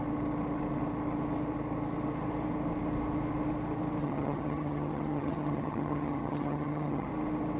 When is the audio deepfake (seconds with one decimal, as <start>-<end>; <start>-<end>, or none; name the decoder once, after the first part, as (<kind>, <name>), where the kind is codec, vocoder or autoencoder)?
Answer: 4.0-7.1 (vocoder, HiFi-GAN)